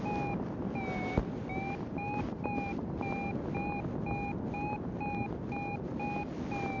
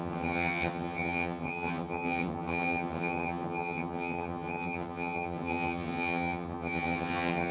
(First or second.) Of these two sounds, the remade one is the second